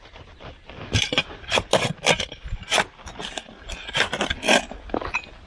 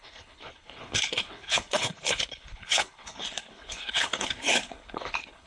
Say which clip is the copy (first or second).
second